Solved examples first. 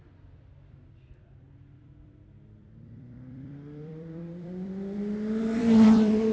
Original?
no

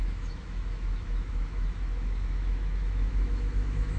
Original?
no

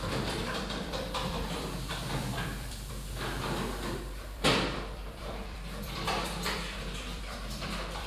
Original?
no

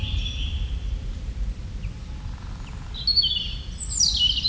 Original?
yes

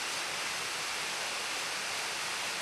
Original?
yes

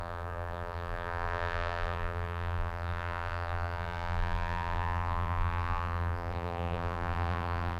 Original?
no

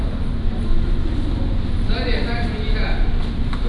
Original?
yes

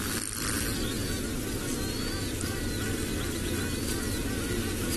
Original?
yes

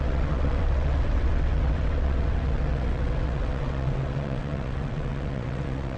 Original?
no